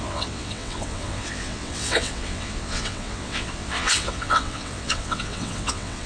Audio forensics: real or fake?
fake